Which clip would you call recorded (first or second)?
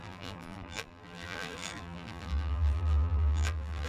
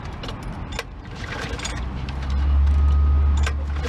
second